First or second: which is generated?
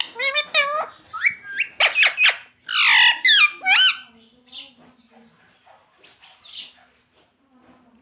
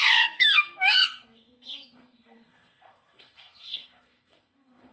second